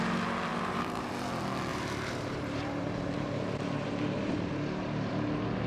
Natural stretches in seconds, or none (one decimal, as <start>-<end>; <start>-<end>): 0.0-0.5; 1.1-1.7; 5.1-5.7